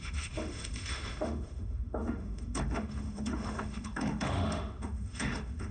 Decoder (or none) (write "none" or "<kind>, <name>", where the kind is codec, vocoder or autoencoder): autoencoder, DAC-VAE